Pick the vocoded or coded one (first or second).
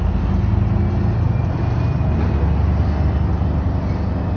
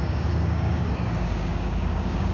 second